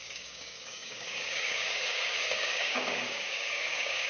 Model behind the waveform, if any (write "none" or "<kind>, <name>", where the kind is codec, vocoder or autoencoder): codec, DAC